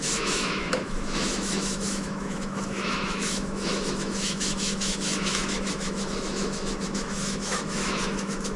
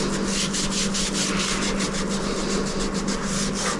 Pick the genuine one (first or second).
second